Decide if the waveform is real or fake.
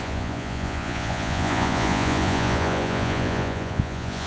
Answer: fake